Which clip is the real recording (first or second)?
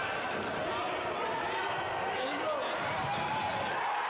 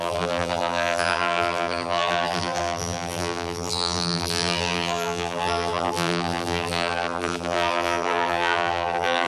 first